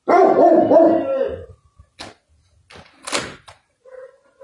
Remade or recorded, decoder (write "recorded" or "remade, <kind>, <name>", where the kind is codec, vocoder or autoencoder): recorded